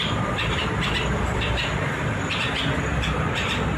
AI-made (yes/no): yes